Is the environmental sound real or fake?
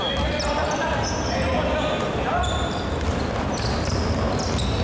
real